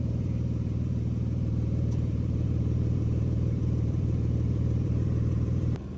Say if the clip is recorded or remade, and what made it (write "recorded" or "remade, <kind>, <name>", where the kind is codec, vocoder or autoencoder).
remade, vocoder, BigVGAN v2